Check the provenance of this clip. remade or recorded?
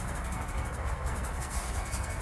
remade